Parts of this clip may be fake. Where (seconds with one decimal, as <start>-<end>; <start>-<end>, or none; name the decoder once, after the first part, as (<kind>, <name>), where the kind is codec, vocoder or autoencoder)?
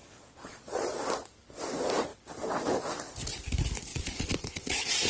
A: 0.0-1.0 (vocoder, Vocos); 3.9-5.1